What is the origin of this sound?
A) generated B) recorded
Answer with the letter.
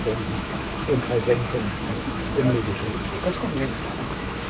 A